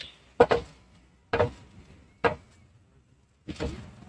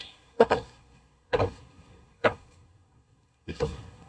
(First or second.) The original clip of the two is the first